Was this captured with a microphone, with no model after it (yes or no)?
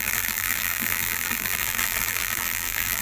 no